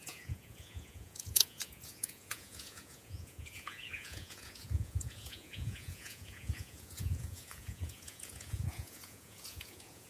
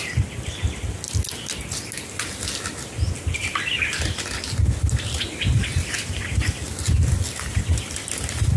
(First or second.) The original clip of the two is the second